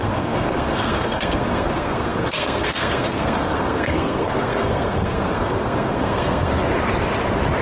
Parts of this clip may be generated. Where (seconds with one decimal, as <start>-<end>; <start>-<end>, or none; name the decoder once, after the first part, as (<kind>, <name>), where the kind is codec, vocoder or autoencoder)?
0.0-6.5 (codec, SNAC)